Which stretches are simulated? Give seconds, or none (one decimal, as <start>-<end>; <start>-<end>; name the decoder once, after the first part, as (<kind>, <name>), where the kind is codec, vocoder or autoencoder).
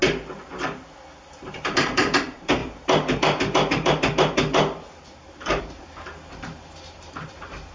1.2-7.7 (vocoder, BigVGAN v2)